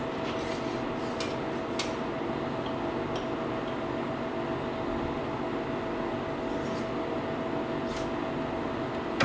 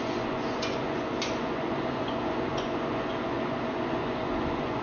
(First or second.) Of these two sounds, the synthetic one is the second